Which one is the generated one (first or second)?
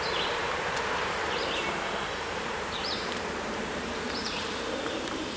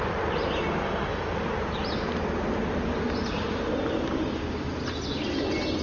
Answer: first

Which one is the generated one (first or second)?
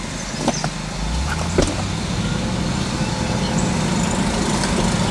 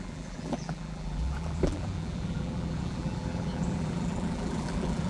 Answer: second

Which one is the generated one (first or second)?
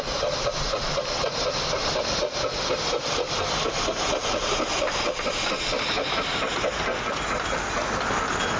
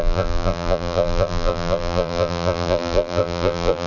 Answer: second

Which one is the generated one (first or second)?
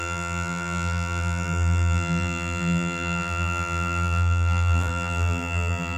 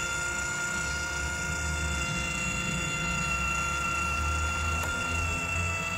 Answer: first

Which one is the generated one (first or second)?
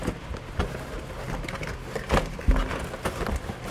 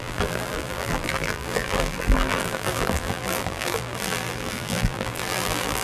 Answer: second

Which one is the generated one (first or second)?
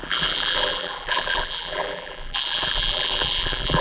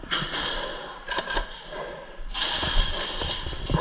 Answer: first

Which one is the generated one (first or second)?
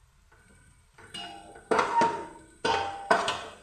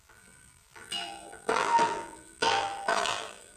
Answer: second